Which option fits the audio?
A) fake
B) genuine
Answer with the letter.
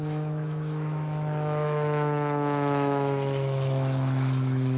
A